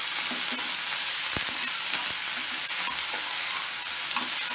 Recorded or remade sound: recorded